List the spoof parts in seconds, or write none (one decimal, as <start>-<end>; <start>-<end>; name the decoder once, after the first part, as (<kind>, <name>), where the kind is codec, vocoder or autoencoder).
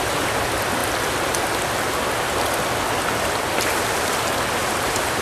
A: 4.6-5.2 (vocoder, BigVGAN v2)